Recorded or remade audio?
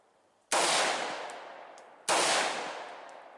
recorded